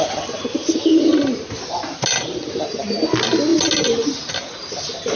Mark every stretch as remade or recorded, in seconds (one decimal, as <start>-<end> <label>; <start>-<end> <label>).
0.0-5.2 recorded

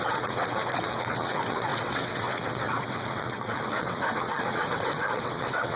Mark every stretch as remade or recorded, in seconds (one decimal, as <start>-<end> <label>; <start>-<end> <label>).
0.0-5.8 remade

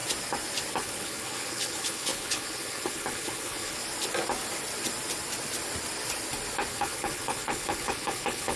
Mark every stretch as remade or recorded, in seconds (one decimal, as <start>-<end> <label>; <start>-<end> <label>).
0.0-0.7 recorded; 0.7-3.8 remade; 3.8-6.7 recorded; 6.7-8.6 remade

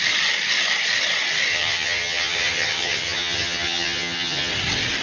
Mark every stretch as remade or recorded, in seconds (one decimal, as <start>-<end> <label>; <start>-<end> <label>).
0.0-1.5 recorded; 1.5-4.5 remade; 4.5-5.0 recorded